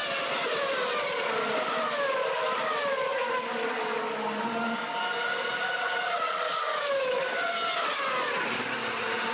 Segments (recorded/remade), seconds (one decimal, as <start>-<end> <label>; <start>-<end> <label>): 0.0-9.3 recorded